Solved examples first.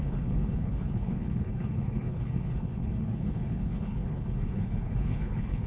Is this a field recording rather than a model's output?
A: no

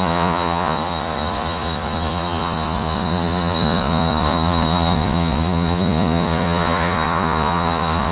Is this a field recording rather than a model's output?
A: no